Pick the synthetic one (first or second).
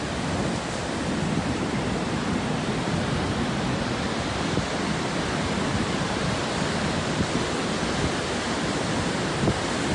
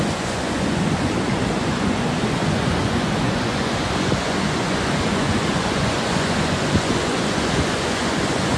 second